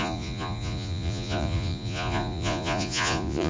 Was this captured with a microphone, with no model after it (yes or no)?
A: no